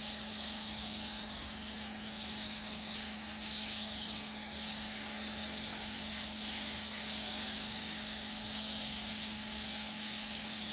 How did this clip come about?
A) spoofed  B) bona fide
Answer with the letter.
A